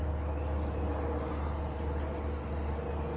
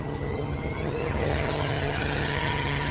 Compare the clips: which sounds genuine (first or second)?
first